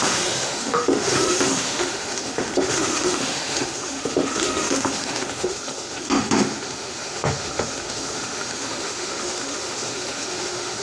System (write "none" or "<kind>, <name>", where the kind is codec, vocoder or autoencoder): autoencoder, DAC-VAE